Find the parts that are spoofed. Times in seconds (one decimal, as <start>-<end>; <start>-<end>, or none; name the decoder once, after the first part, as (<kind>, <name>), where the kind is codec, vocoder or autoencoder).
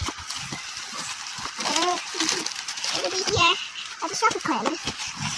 none